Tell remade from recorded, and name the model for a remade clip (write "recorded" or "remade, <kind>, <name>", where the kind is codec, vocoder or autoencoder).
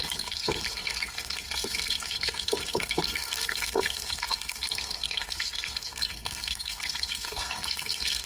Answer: remade, codec, SNAC